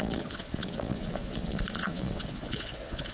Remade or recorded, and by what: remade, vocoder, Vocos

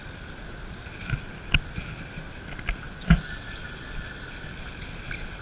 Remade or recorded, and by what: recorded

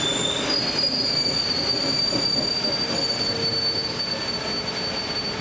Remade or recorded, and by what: recorded